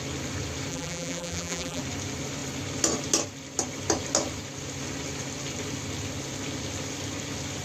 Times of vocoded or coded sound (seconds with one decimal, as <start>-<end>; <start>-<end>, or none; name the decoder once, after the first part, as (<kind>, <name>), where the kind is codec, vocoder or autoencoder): 0.7-1.8 (vocoder, BigVGAN v2)